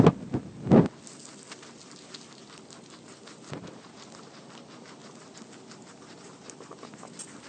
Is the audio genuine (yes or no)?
yes